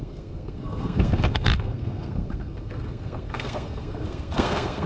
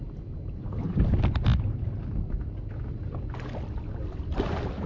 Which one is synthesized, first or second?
first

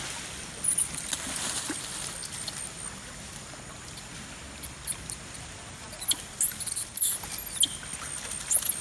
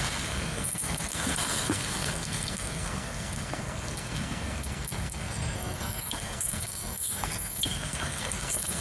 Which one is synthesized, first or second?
second